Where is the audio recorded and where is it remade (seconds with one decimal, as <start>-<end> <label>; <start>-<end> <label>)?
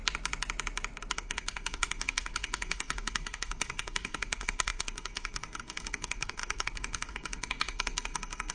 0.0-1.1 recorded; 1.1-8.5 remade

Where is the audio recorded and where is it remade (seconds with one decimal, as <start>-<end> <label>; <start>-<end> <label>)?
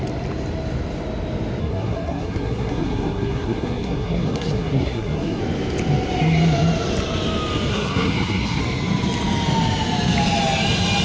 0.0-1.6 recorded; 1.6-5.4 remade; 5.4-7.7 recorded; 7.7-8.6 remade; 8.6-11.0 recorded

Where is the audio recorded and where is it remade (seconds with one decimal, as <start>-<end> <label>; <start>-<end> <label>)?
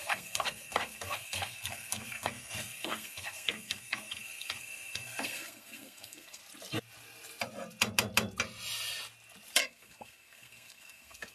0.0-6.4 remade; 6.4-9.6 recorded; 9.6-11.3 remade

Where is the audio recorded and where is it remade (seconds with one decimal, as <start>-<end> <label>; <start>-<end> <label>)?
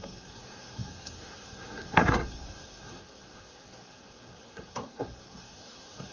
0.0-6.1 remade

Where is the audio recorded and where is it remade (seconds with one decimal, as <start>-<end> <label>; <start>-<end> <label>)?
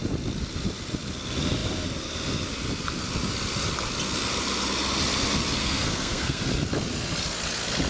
0.0-5.6 recorded; 5.6-6.4 remade; 6.4-7.9 recorded